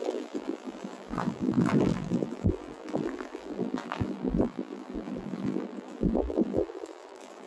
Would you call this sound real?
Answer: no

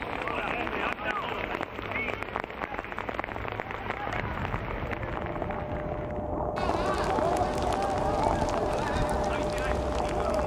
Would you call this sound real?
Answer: yes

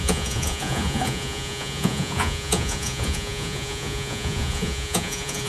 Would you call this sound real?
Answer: no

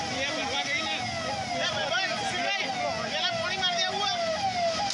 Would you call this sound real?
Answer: yes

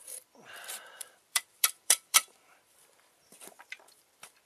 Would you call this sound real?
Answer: no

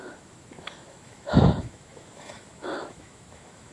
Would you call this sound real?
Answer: no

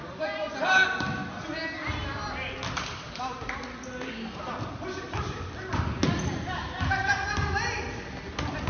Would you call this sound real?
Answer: yes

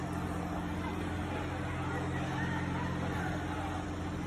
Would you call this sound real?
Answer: yes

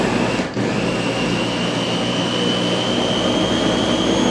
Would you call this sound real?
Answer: yes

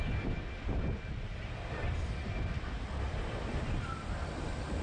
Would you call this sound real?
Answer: yes